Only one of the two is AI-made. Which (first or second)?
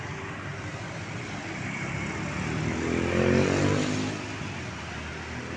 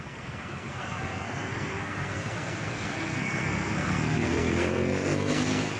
second